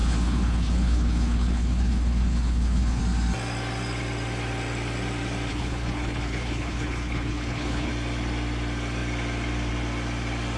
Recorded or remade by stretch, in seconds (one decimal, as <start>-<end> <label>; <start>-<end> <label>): 0.0-3.0 remade; 3.0-5.5 recorded; 5.5-7.9 remade; 7.9-10.6 recorded